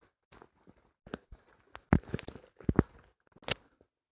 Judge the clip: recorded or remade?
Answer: recorded